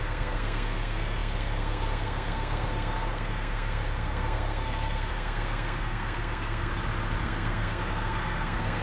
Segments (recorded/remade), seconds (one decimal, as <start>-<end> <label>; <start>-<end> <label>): 0.0-6.7 remade; 6.7-7.2 recorded; 7.2-8.8 remade